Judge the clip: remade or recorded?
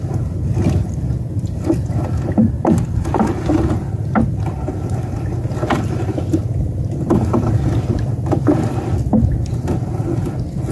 recorded